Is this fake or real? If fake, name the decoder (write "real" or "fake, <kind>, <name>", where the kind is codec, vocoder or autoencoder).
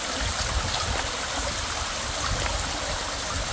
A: real